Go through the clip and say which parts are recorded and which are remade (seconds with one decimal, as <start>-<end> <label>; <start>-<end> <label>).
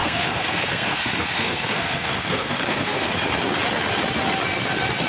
0.0-3.1 remade; 3.1-5.1 recorded